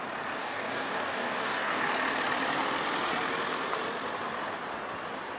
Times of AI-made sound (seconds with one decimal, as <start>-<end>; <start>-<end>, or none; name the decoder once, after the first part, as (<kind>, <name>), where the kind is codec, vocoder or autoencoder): 0.4-1.9 (codec, DAC)